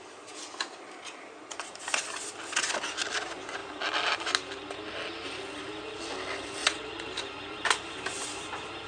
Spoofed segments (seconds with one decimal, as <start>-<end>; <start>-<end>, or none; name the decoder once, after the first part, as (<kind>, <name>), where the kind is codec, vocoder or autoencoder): 6.6-7.1 (vocoder, Vocos)